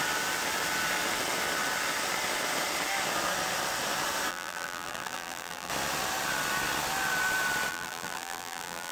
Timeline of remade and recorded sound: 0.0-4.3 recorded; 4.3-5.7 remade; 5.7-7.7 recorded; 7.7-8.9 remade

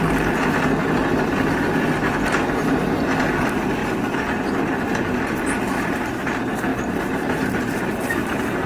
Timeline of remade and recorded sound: 0.0-6.7 recorded; 6.7-7.6 remade; 7.6-8.7 recorded

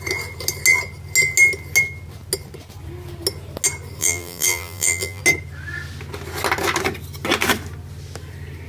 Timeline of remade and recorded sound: 0.0-4.0 recorded; 4.0-5.2 remade; 5.2-8.7 recorded

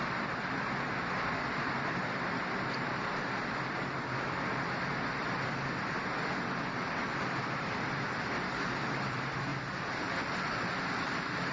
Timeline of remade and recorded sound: 0.0-9.5 remade; 9.5-10.2 recorded; 10.2-11.5 remade

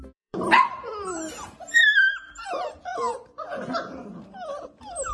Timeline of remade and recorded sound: 0.0-2.9 remade; 2.9-4.2 recorded; 4.2-5.1 remade

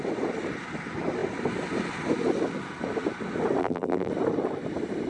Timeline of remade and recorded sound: 0.0-3.6 recorded; 3.6-4.1 remade; 4.1-5.1 recorded

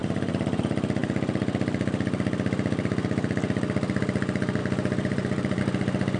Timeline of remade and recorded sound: 0.0-0.6 remade; 0.6-4.6 recorded; 4.6-5.6 remade; 5.6-6.2 recorded

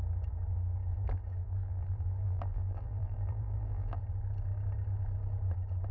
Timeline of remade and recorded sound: 0.0-1.4 recorded; 1.4-4.0 remade; 4.0-5.9 recorded